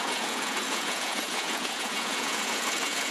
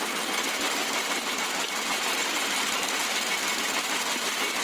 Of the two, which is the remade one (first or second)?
first